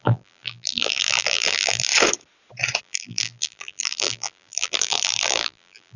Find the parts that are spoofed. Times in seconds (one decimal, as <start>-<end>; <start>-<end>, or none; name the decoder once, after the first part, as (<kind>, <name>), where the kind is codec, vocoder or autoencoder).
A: 0.0-1.9 (vocoder, BigVGAN v2); 2.8-6.0